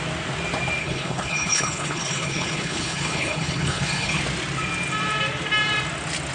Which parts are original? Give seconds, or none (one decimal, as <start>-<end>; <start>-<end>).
0.0-0.8; 4.2-6.3